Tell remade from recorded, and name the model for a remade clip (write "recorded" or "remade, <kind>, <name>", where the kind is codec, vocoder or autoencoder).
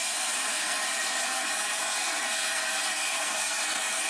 remade, codec, SNAC